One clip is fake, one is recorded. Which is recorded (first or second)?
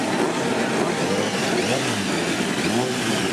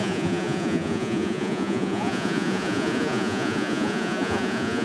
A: first